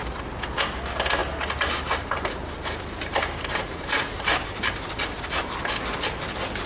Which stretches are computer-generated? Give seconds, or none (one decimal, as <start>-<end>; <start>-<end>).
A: 1.2-5.2